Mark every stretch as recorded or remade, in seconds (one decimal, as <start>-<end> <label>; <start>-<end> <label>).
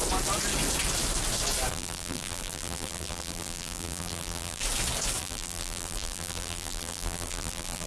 0.0-1.7 recorded; 1.7-4.6 remade; 4.6-5.2 recorded; 5.2-7.9 remade